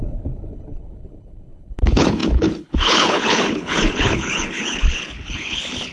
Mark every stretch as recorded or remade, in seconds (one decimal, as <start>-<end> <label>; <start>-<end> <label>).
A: 0.0-5.9 remade